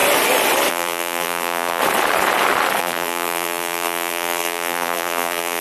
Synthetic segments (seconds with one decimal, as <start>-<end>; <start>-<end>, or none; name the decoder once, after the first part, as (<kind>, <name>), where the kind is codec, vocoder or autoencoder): 0.7-1.8 (vocoder, BigVGAN v2); 2.8-5.6